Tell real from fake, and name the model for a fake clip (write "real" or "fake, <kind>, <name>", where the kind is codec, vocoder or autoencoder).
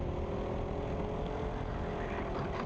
real